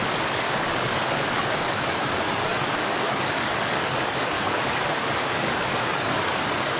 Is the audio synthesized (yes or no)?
yes